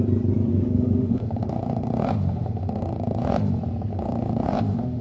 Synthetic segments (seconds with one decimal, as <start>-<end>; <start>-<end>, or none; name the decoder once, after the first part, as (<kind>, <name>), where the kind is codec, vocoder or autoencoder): 0.5-3.5 (autoencoder, DAC-VAE); 3.9-5.0